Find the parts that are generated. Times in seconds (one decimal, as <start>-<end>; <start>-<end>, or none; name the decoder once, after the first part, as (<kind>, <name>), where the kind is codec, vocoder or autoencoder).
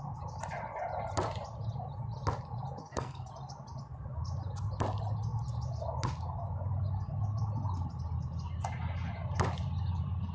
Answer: 2.8-3.3 (codec, SNAC)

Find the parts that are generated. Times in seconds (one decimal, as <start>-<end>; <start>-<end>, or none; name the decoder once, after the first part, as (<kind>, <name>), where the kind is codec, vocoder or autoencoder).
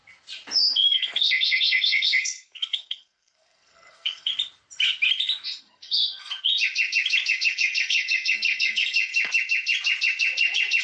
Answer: 0.6-4.3 (codec, SNAC); 5.6-6.3; 7.3-9.1